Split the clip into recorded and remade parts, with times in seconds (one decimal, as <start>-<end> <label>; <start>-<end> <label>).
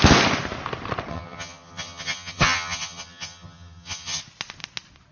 0.0-1.1 recorded; 1.1-4.2 remade; 4.2-5.1 recorded